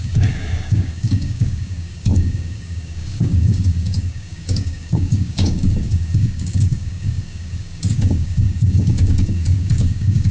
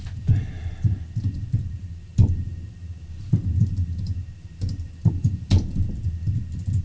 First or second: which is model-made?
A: first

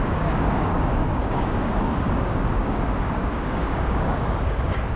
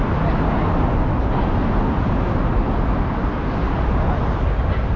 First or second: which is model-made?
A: first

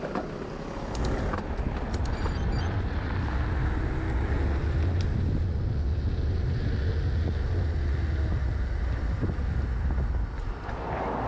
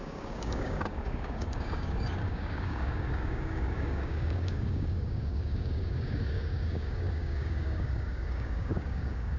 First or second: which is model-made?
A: second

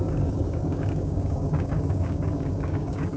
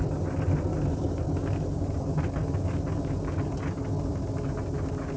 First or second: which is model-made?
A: first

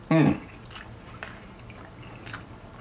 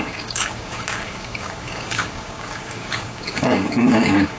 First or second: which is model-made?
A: second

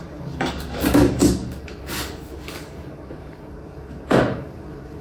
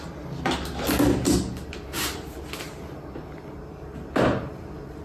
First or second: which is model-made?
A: first